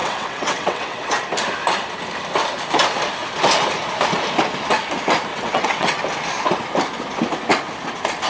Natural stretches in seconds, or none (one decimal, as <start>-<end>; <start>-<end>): 1.1-5.3; 6.0-8.3